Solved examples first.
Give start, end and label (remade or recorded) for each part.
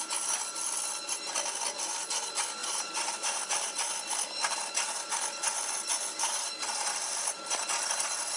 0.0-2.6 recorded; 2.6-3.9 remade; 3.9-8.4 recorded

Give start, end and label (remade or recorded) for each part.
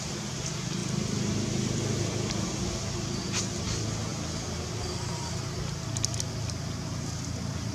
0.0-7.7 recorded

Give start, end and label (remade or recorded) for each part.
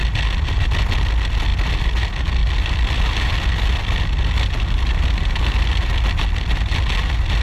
0.0-2.4 recorded; 2.4-3.5 remade; 3.5-7.4 recorded